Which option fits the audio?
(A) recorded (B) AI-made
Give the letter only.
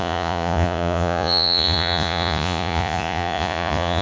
B